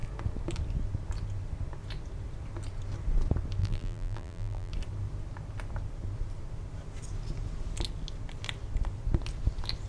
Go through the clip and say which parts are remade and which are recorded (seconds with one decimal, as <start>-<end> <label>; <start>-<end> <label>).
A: 0.0-3.6 recorded; 3.6-4.7 remade; 4.7-9.9 recorded